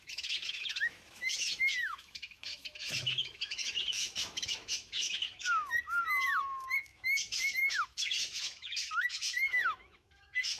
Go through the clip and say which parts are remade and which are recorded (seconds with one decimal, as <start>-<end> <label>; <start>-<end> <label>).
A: 0.0-10.6 remade